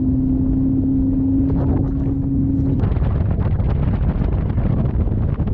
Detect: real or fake real